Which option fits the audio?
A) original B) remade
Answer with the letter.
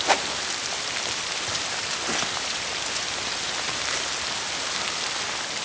A